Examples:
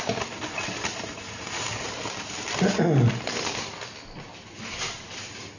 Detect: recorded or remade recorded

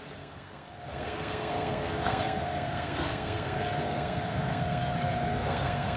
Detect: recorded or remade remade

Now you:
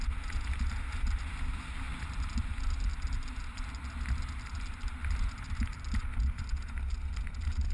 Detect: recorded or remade recorded